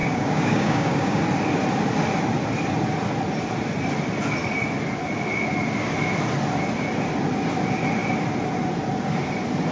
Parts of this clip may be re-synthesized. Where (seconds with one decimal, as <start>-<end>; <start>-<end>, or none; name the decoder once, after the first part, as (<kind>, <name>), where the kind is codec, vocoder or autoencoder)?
0.0-1.2 (codec, DAC)